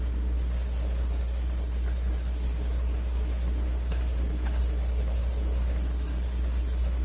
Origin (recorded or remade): remade